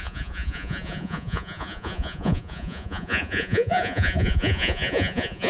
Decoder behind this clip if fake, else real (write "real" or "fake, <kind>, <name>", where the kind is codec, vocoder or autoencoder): fake, vocoder, Vocos